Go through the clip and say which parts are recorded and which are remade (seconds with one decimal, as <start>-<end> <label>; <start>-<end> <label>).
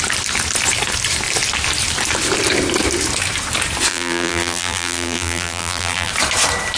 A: 0.0-3.9 recorded; 3.9-6.1 remade; 6.1-6.8 recorded